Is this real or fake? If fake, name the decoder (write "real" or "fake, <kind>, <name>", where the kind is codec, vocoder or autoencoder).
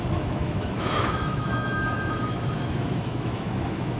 fake, autoencoder, DAC-VAE